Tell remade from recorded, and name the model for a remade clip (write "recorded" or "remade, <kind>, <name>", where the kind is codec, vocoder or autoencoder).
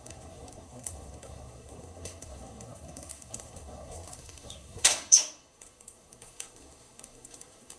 remade, codec, SNAC